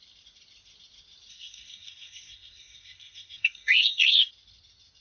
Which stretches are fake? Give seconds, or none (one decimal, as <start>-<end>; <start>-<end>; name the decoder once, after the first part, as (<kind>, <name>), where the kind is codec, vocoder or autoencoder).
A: 1.3-4.3 (codec, SNAC)